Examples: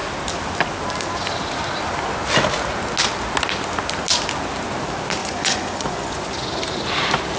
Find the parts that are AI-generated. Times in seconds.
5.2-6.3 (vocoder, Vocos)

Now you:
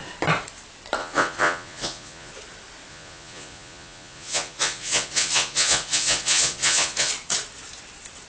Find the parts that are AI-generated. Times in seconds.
1.0-2.3 (vocoder, Vocos); 2.9-7.1